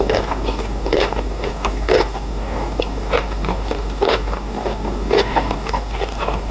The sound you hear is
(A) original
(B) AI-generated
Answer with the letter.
B